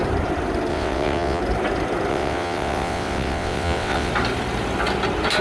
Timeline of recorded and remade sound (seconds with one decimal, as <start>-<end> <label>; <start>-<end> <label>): 0.0-0.7 recorded; 0.7-1.4 remade; 1.4-2.1 recorded; 2.1-4.1 remade; 4.1-5.4 recorded